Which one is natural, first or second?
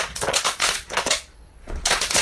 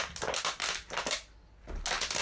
second